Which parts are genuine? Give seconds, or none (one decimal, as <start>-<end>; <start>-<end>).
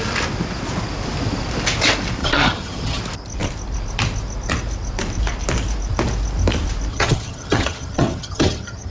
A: 0.0-2.2; 3.0-6.9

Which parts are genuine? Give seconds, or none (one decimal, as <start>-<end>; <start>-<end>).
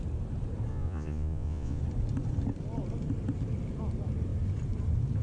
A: 0.0-0.7; 1.8-5.2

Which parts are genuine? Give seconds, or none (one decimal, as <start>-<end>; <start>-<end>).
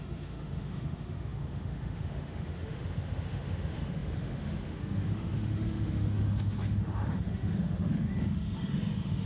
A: none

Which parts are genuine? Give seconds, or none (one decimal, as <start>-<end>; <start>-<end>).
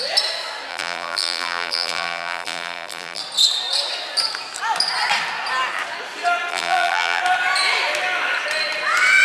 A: 0.0-0.7; 3.2-6.5; 7.2-9.2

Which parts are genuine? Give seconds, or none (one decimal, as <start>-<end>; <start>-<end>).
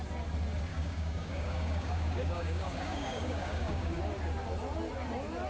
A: 0.0-0.7; 4.0-5.5